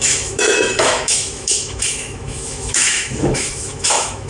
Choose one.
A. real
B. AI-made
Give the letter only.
B